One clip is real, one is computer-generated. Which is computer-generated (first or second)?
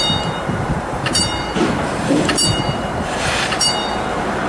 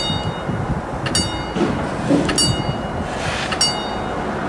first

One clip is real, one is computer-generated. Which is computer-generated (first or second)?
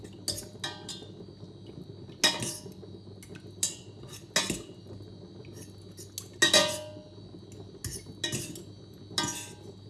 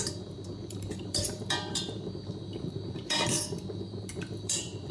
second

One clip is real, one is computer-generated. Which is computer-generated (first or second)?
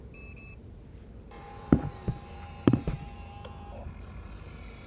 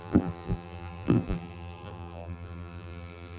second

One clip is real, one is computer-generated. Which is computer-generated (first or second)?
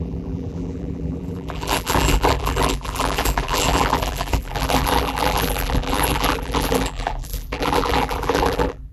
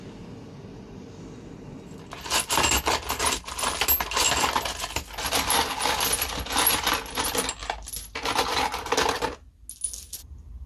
first